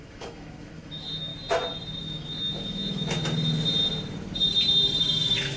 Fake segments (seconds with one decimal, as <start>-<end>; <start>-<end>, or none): 0.0-1.3; 2.0-3.2; 5.0-5.6